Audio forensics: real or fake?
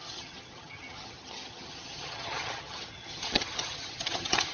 fake